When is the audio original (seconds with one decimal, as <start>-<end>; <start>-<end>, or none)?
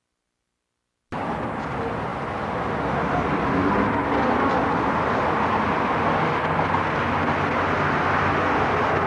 0.0-9.1